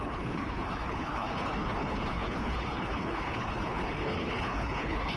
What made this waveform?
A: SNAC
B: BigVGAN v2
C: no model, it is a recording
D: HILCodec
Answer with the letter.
D